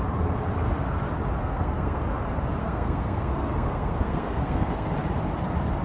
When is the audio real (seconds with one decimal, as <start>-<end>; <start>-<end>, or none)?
0.0-1.4; 2.0-2.6; 4.9-5.8